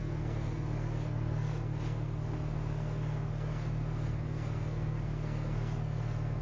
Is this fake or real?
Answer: fake